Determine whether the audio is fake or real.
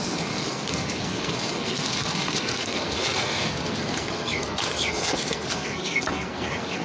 fake